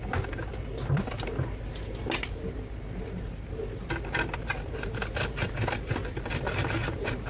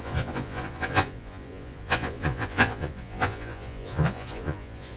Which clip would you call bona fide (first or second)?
first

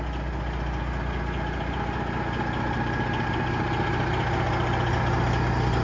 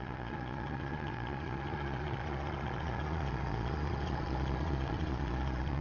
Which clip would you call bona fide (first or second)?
first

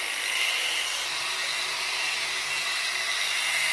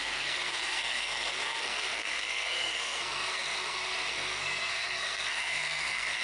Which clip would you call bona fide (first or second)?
first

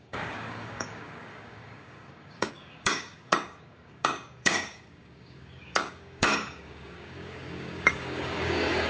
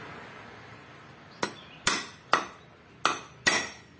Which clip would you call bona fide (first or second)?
second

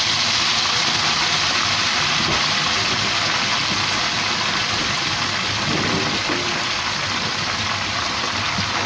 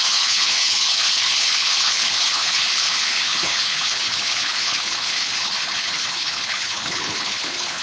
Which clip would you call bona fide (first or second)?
first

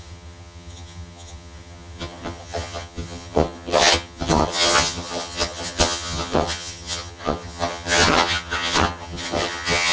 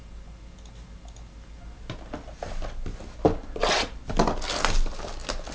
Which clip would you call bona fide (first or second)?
second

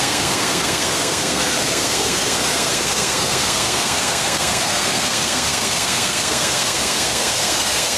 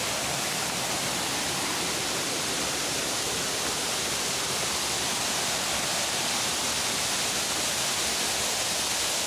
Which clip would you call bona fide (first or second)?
second